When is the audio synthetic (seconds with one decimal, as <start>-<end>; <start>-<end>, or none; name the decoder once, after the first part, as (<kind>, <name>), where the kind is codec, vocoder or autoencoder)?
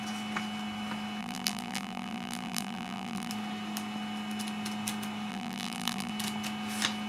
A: 1.2-3.3 (vocoder, BigVGAN v2); 5.3-6.1